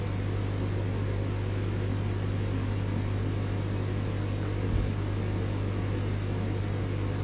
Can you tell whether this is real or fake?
real